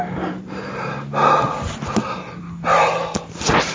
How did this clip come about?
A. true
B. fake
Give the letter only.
A